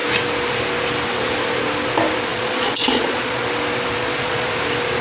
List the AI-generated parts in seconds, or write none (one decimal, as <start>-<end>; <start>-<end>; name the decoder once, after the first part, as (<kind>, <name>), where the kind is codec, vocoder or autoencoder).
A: 2.3-3.4 (vocoder, Vocos); 4.0-4.5